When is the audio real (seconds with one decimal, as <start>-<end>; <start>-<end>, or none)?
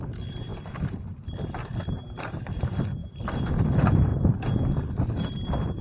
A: none